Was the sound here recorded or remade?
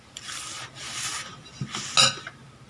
recorded